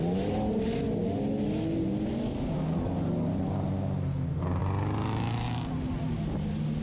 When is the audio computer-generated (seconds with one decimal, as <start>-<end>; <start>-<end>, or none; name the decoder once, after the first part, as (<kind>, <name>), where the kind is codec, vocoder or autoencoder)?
none